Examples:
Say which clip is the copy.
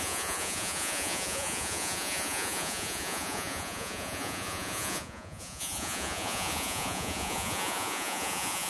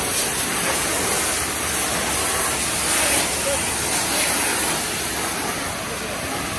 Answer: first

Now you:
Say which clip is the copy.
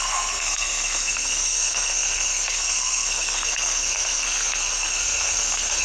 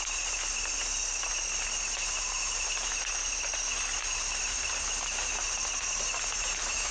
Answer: first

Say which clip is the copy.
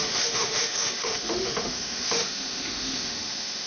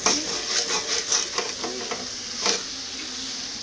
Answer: first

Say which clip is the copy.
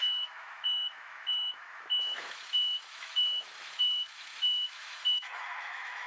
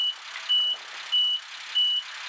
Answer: first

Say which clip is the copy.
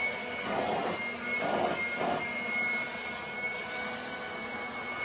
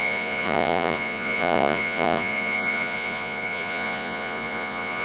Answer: second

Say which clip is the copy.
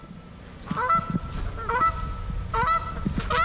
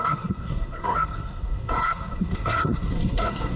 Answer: second